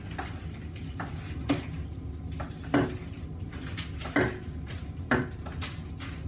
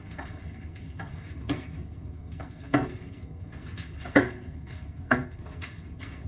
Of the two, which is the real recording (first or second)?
first